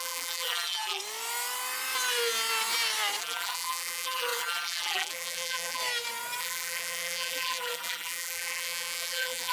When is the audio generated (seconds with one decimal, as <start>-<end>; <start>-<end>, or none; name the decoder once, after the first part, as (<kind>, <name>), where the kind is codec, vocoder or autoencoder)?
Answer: 0.0-1.0 (vocoder, BigVGAN v2); 3.2-5.8; 6.4-9.5